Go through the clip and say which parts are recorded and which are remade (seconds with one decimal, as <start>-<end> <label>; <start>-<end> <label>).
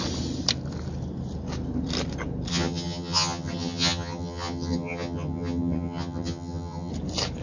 0.0-2.5 recorded; 2.5-6.9 remade; 6.9-7.4 recorded